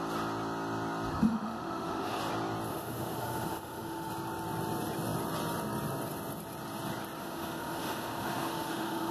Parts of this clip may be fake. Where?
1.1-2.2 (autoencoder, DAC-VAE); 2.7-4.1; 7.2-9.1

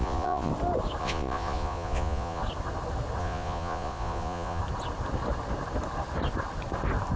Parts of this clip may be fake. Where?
0.0-0.5 (vocoder, Vocos); 1.0-2.4; 3.2-4.6

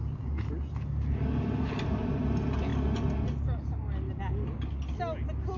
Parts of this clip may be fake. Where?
none

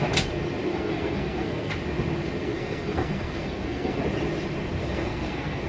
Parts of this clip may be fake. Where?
0.7-1.7 (codec, SNAC); 2.4-4.0; 4.8-5.7

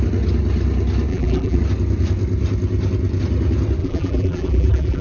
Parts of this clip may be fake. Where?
1.1-1.6 (vocoder, BigVGAN v2); 3.8-5.0

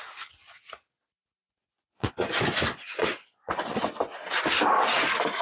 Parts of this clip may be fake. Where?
1.4-3.7 (vocoder, Vocos)